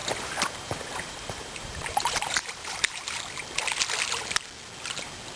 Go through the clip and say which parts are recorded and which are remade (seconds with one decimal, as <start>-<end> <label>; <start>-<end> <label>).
0.0-3.1 remade; 3.1-5.4 recorded